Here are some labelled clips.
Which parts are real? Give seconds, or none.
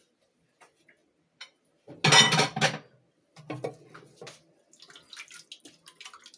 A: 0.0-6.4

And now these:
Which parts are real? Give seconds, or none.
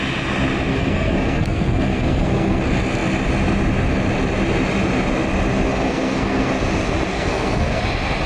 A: 0.0-0.7; 2.6-5.7; 6.5-7.1; 7.8-8.3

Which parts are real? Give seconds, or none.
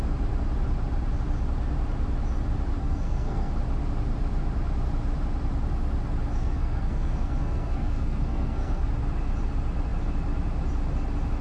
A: 0.0-2.8; 3.5-6.3; 8.9-11.4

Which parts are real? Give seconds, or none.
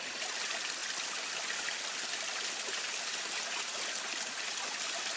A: 0.0-5.2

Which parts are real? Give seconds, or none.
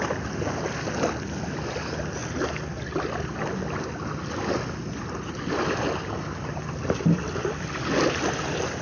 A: 0.0-8.8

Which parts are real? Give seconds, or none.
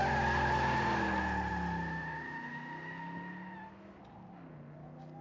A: 0.0-5.2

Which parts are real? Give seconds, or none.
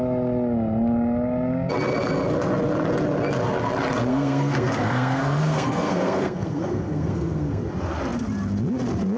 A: 0.0-4.1; 7.6-9.2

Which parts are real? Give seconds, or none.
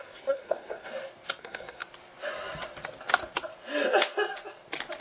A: 0.9-1.4; 1.8-5.0